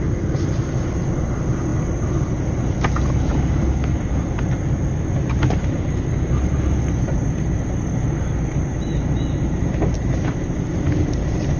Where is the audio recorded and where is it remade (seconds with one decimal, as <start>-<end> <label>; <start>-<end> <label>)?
0.0-11.6 recorded